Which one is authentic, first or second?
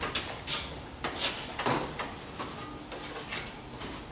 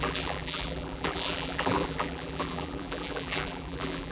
first